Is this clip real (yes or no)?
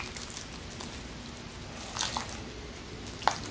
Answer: yes